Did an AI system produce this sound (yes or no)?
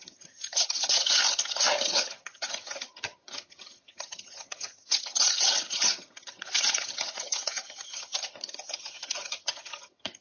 yes